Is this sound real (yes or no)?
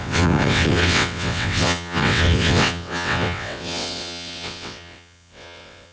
no